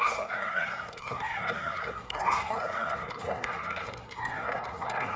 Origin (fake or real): fake